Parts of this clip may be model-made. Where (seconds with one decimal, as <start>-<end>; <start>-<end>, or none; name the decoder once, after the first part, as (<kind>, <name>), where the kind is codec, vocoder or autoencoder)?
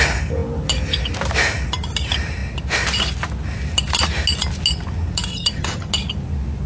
5.3-5.9 (vocoder, HiFi-GAN)